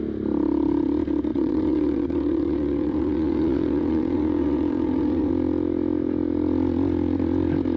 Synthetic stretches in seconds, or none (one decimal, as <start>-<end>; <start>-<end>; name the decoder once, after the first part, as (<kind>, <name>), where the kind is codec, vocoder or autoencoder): 1.3-5.3 (vocoder, WaveNeXt)